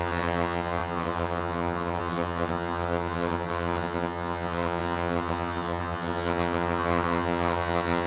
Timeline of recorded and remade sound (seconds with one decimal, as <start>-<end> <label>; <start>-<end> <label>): 0.0-8.1 remade